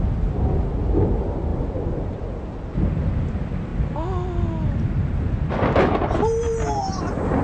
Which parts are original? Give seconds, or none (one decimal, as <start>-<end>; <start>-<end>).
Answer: 0.0-7.4